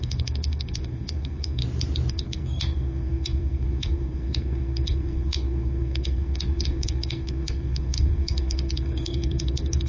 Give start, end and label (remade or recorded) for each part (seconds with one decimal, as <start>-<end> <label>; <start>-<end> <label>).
0.0-1.6 remade; 1.6-2.1 recorded; 2.1-9.9 remade

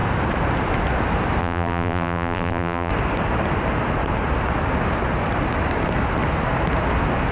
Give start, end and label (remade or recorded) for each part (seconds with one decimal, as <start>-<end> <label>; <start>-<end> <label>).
0.0-1.4 recorded; 1.4-2.9 remade; 2.9-7.3 recorded

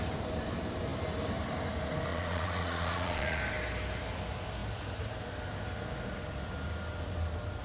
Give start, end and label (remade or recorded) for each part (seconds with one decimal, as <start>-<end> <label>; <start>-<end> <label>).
0.0-2.1 recorded; 2.1-3.4 remade; 3.4-7.6 recorded

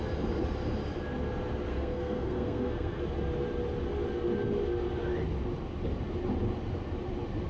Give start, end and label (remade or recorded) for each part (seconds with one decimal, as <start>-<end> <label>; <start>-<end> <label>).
0.0-1.7 recorded; 1.7-3.0 remade; 3.0-7.5 recorded

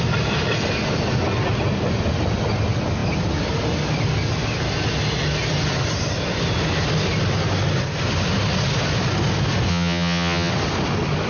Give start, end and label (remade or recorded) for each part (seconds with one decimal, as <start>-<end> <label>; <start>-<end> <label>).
0.0-9.7 recorded; 9.7-10.5 remade; 10.5-11.3 recorded

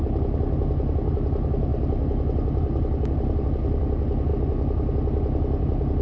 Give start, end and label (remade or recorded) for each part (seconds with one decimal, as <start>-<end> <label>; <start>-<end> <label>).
0.0-6.0 recorded

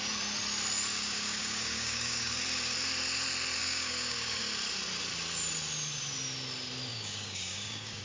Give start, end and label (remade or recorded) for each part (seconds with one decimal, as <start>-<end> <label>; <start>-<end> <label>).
0.0-0.9 recorded; 0.9-2.3 remade; 2.3-3.6 recorded; 3.6-4.4 remade; 4.4-6.9 recorded; 6.9-8.0 remade

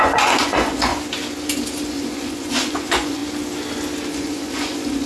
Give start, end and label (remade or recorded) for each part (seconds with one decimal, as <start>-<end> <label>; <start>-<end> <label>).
0.0-0.9 remade; 0.9-1.9 recorded; 1.9-3.2 remade; 3.2-4.1 recorded; 4.1-5.1 remade